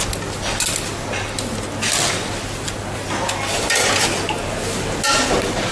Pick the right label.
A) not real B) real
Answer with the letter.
B